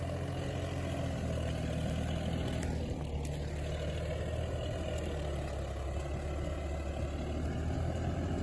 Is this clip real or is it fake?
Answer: real